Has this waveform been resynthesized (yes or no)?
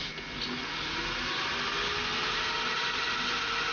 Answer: no